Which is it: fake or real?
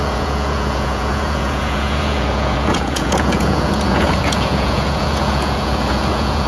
fake